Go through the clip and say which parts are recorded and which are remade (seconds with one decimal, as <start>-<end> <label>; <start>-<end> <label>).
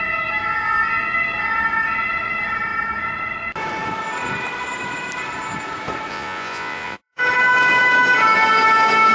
0.0-6.1 recorded; 6.1-7.2 remade; 7.2-9.1 recorded